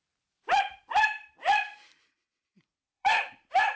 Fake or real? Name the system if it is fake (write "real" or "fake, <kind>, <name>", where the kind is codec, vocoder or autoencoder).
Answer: fake, vocoder, BigVGAN v2